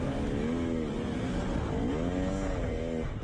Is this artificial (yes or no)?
no